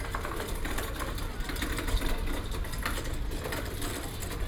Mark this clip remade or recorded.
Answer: remade